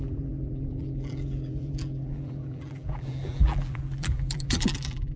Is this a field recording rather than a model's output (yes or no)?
no